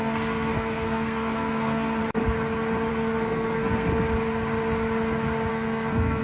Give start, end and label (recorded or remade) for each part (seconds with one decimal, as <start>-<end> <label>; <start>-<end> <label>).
0.0-2.0 remade; 2.0-2.9 recorded; 2.9-3.9 remade; 3.9-5.5 recorded; 5.5-6.2 remade